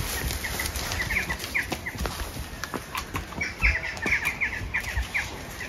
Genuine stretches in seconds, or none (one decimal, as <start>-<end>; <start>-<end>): 0.0-5.7